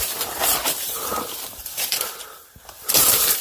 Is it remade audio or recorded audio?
remade